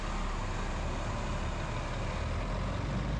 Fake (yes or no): no